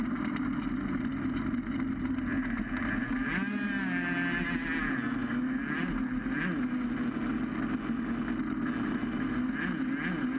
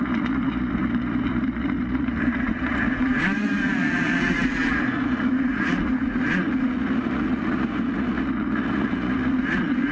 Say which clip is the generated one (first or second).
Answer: second